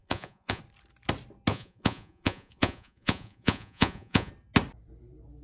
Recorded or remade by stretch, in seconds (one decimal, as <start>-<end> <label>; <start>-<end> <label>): 0.0-0.6 remade; 0.6-1.5 recorded; 1.5-4.3 remade; 4.3-5.4 recorded